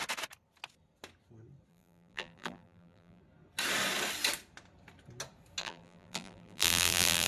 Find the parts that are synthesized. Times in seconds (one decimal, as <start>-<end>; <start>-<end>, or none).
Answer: 1.7-3.2; 5.6-7.3